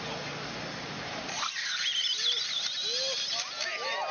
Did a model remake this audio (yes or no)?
no